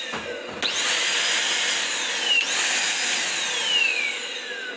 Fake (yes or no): no